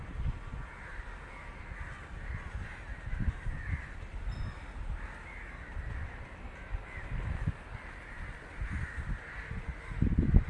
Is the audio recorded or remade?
recorded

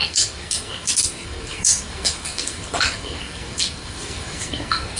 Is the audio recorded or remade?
remade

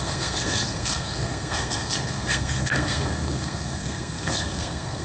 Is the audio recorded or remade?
remade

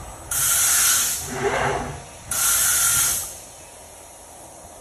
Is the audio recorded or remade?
recorded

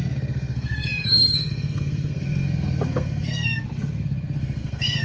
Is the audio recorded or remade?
remade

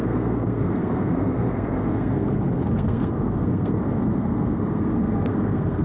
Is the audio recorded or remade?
remade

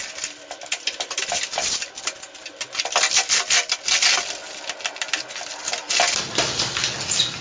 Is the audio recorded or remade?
recorded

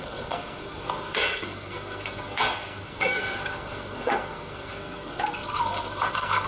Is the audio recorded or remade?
remade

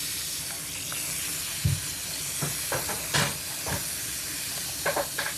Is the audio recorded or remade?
recorded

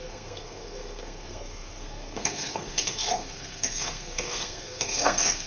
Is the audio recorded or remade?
remade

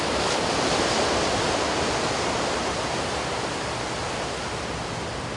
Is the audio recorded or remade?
recorded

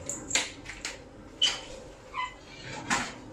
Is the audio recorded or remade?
recorded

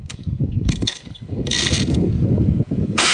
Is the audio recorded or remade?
remade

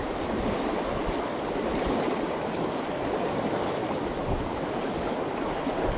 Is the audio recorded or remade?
recorded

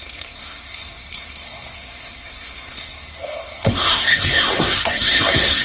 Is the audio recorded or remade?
remade